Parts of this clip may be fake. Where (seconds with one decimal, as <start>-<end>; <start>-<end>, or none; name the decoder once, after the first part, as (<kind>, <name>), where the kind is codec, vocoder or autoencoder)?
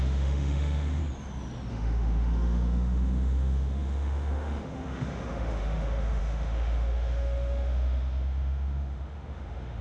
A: 0.0-1.0 (autoencoder, DAC-VAE); 1.7-9.8